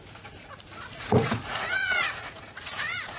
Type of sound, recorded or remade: remade